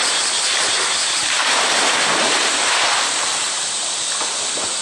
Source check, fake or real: real